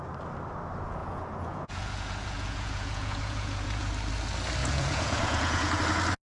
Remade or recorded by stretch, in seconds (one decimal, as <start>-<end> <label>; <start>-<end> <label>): 0.0-1.0 recorded; 1.0-3.9 remade; 3.9-4.6 recorded; 4.6-5.8 remade; 5.8-6.3 recorded